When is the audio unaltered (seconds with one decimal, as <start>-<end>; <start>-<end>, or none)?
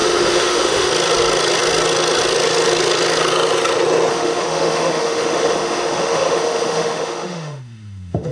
0.9-4.1